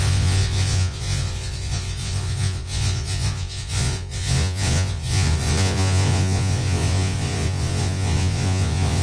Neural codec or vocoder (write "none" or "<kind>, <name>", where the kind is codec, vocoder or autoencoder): vocoder, Vocos